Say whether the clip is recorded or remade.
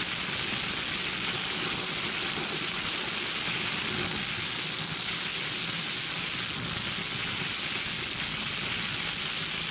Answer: recorded